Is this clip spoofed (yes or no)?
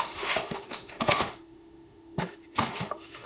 yes